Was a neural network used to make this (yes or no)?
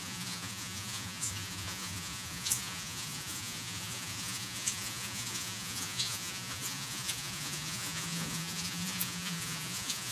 yes